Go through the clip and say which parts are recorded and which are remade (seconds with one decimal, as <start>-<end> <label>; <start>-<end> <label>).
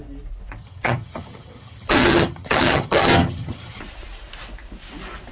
0.0-0.6 recorded; 0.6-3.8 remade; 3.8-5.3 recorded